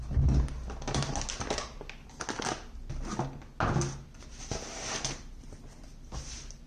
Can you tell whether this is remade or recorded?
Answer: recorded